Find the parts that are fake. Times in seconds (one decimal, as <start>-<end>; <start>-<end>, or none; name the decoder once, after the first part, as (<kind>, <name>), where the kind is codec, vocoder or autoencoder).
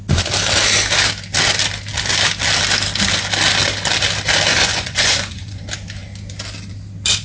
4.5-5.6 (vocoder, Vocos)